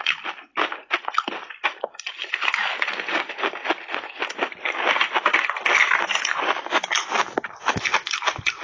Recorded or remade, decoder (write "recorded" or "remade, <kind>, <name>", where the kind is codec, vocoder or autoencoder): recorded